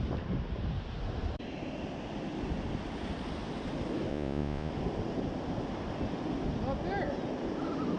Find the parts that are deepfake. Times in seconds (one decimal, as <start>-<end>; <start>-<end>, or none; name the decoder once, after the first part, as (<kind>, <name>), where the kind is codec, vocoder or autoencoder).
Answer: 4.1-4.7 (vocoder, Vocos)

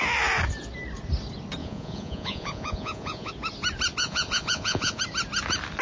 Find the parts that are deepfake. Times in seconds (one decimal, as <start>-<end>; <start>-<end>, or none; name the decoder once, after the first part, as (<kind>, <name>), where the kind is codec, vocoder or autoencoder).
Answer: 1.6-3.3 (vocoder, Vocos); 4.0-5.0

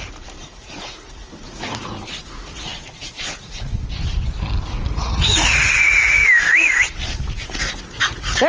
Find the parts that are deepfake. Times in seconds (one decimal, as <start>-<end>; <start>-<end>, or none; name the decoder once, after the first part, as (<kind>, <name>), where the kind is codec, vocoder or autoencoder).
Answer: 0.0-3.7 (vocoder, Vocos); 4.7-6.2; 7.4-8.5

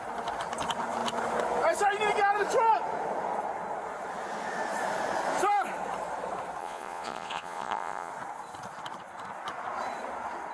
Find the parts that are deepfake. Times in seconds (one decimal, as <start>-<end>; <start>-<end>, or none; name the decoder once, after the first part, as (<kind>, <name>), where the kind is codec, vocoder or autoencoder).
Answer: 6.6-8.1 (vocoder, Vocos)

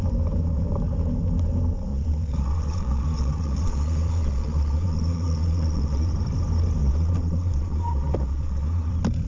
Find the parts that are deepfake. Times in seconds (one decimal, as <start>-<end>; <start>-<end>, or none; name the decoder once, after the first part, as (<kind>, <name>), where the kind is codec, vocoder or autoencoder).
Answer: 1.9-6.1 (vocoder, Vocos); 6.8-8.9

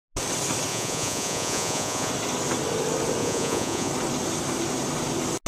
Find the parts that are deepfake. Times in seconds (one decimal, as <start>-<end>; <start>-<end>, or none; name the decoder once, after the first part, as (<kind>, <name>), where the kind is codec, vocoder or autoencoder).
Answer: 0.7-2.1 (vocoder, Vocos); 3.2-3.9